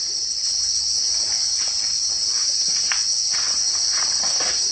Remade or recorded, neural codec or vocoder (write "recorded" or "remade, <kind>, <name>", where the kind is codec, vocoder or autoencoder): recorded